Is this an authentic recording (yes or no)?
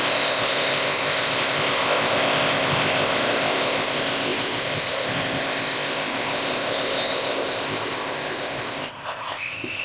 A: no